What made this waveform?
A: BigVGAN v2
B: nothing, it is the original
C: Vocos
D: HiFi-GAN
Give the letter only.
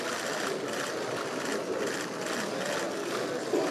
B